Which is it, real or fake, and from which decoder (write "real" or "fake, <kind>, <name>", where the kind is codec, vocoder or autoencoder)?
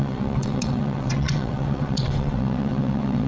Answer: fake, vocoder, WaveNeXt